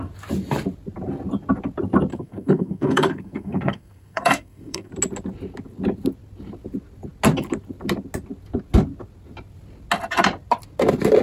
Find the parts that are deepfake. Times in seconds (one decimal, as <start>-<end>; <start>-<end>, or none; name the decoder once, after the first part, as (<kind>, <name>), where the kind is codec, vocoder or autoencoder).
2.1-4.9 (codec, SNAC)